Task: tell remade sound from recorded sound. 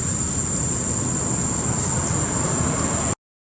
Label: recorded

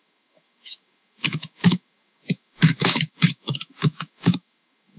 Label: remade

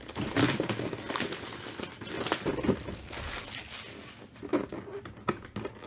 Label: recorded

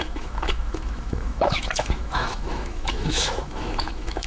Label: remade